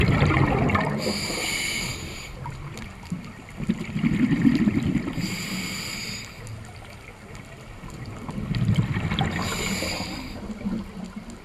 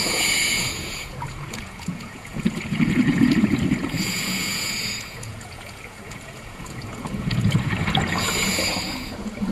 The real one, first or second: first